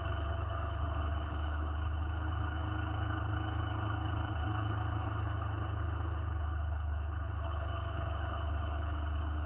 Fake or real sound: fake